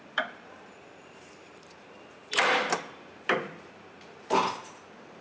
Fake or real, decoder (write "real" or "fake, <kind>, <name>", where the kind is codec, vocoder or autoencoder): fake, vocoder, BigVGAN v2